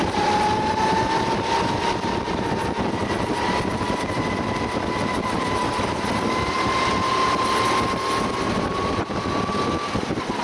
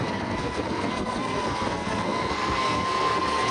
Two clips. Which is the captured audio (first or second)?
first